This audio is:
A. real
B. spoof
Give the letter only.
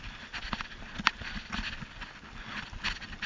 A